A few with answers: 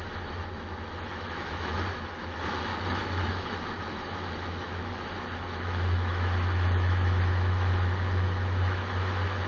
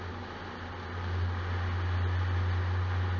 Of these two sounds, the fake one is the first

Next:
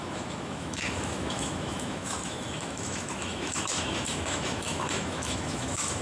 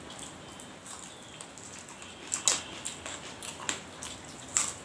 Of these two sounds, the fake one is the first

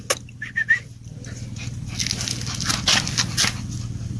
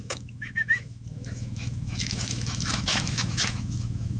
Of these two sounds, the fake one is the second